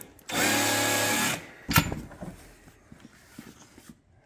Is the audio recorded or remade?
recorded